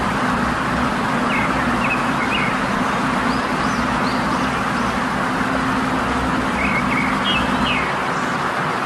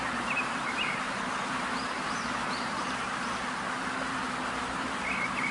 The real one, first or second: first